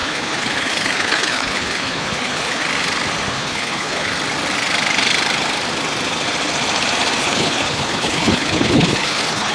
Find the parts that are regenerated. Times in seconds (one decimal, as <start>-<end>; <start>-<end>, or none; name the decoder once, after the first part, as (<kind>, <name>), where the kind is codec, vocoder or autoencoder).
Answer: 0.0-2.6 (codec, HILCodec); 3.3-4.1; 7.2-9.5